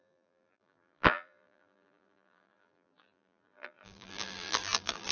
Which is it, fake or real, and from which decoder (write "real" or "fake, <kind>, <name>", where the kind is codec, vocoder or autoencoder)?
fake, vocoder, BigVGAN v2